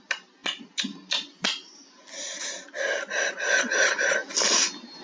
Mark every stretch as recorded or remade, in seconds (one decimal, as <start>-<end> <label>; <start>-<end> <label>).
0.0-5.0 recorded